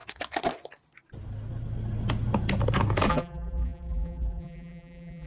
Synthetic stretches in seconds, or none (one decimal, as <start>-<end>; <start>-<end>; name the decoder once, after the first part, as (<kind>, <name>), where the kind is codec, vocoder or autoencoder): 3.1-5.3 (vocoder, BigVGAN v2)